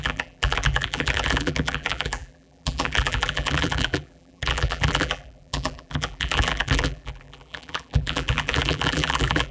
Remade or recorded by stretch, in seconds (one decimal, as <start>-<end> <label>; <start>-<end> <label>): 0.0-9.5 remade